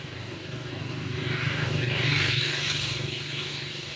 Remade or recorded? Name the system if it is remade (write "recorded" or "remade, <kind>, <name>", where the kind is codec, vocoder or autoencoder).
remade, codec, DAC